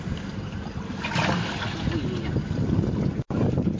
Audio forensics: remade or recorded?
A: recorded